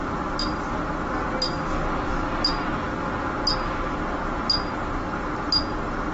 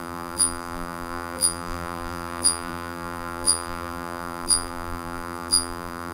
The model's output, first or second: second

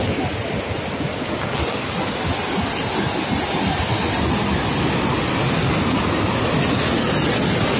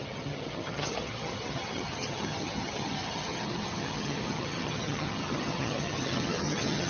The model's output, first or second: second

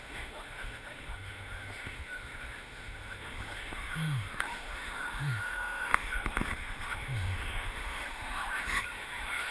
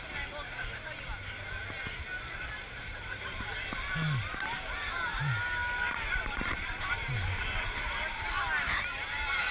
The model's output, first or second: first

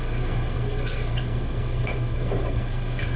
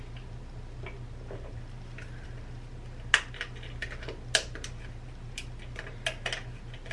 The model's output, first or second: first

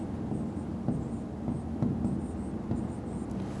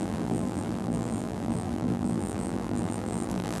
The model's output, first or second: second